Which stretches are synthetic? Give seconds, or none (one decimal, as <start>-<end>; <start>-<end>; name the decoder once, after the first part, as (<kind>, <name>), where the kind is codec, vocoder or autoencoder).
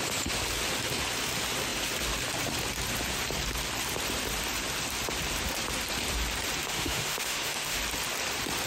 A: 6.6-7.8 (autoencoder, DAC-VAE)